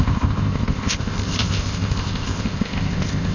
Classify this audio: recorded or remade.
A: remade